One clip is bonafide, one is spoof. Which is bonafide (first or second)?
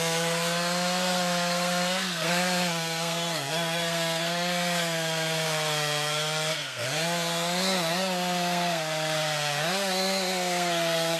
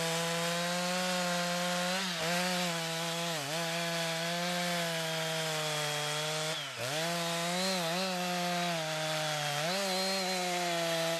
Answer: second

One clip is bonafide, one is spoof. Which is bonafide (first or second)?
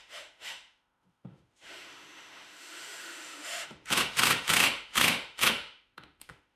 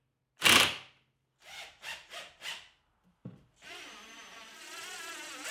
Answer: second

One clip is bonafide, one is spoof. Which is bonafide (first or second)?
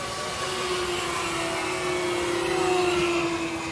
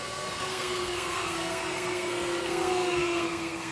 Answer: first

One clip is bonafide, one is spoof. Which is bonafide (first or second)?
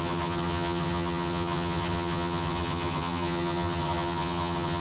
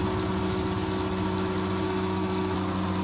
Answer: second